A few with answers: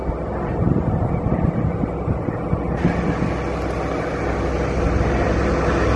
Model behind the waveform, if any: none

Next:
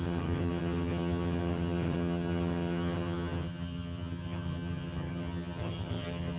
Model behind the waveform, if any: vocoder, HiFi-GAN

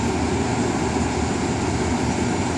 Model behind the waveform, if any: none